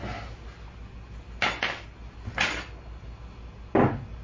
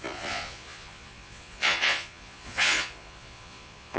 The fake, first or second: second